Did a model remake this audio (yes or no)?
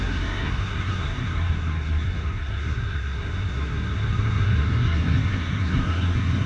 yes